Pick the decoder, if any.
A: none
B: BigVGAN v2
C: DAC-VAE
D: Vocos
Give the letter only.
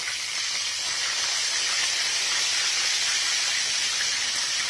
A